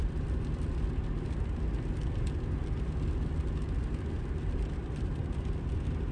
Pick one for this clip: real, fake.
real